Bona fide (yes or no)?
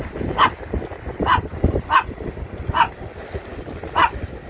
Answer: yes